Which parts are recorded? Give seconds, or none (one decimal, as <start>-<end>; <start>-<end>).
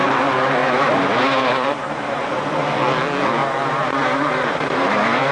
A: 0.0-0.6; 2.4-3.4